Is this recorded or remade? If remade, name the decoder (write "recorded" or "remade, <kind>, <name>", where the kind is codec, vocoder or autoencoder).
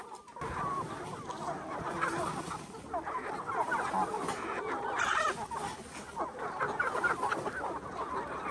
recorded